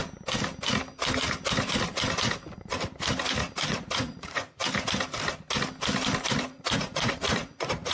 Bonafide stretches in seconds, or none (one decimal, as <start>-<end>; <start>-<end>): 0.0-3.7; 4.6-6.4